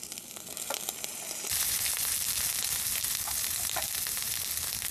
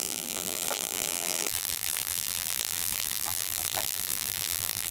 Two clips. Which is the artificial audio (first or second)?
second